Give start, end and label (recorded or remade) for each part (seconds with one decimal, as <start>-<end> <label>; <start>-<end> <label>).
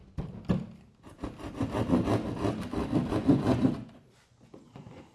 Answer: 0.0-3.1 recorded; 3.1-5.1 remade